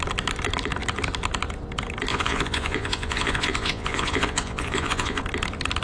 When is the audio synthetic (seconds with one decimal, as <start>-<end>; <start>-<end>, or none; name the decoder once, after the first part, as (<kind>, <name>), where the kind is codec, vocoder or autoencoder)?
2.1-5.2 (vocoder, Vocos)